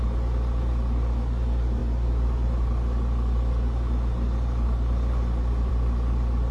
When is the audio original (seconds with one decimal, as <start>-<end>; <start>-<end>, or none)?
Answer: 0.0-6.5